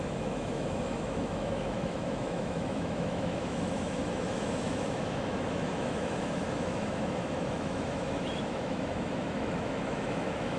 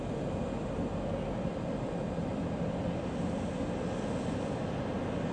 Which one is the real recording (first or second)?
second